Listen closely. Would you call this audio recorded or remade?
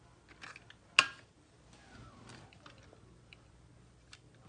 recorded